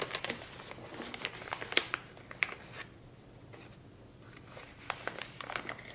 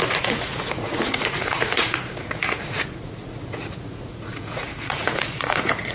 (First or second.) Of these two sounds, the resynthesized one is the second